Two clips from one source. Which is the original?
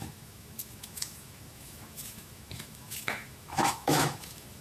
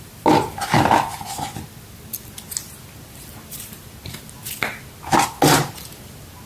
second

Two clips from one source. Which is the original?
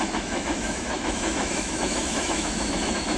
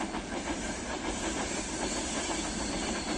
second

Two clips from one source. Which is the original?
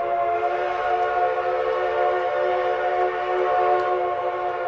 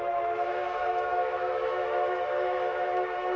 first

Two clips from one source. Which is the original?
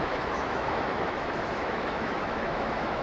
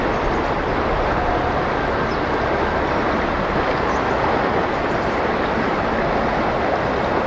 second